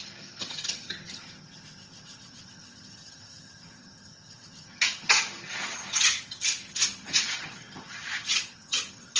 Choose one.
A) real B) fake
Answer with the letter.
B